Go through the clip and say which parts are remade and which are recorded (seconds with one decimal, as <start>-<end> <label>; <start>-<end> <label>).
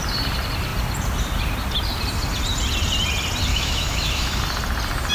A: 0.0-3.5 recorded; 3.5-4.4 remade; 4.4-5.1 recorded